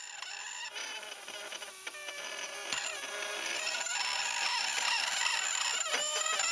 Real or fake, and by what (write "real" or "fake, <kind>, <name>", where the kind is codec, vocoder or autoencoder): real